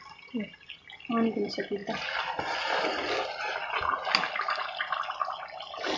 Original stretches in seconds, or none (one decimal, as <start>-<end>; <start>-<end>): 0.0-6.0